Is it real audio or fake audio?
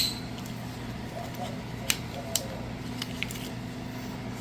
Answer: real